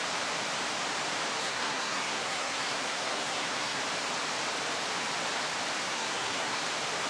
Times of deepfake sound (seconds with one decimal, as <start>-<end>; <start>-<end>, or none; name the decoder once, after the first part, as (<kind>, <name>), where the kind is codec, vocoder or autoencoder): 1.4-3.8 (codec, SNAC); 5.8-6.6